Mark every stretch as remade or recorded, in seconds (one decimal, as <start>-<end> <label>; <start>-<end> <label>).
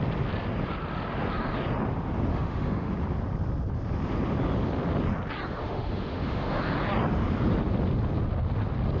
0.0-2.3 recorded; 2.3-2.9 remade; 2.9-5.6 recorded; 5.6-6.6 remade; 6.6-9.0 recorded